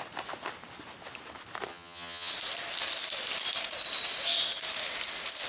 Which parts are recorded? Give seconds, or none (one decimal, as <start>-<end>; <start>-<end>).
0.0-1.7; 2.3-5.5